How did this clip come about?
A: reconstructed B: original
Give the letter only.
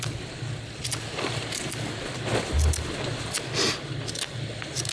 B